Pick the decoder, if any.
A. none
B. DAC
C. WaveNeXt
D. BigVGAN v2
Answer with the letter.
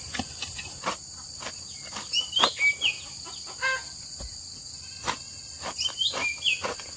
A